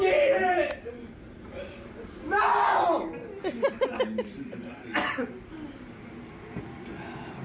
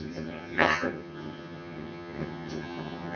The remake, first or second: second